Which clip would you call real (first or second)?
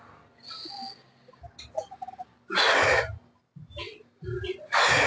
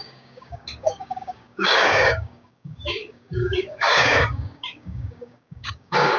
first